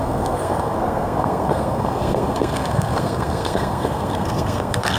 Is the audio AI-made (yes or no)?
yes